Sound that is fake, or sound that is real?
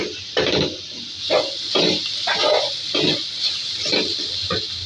real